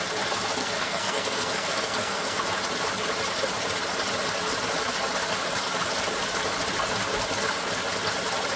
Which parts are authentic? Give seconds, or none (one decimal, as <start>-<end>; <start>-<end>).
0.0-0.6; 2.4-8.6

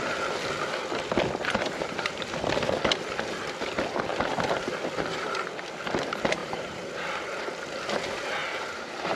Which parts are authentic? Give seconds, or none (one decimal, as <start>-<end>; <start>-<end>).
0.0-1.4; 2.2-6.4; 6.9-8.4

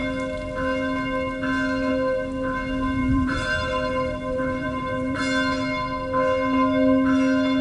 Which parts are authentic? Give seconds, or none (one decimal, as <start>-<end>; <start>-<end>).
0.0-3.0; 5.2-7.6

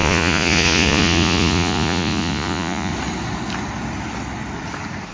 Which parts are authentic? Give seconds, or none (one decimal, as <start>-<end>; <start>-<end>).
2.9-5.1